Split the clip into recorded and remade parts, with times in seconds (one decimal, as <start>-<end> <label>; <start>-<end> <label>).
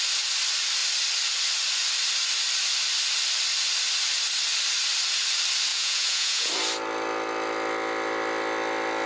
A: 0.0-5.7 recorded; 5.7-6.5 remade; 6.5-9.1 recorded